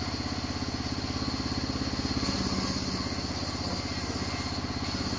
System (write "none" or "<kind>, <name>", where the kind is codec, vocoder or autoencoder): none